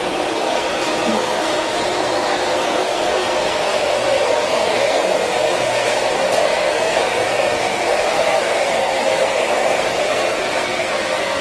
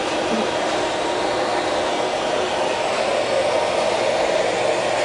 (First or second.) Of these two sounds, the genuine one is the second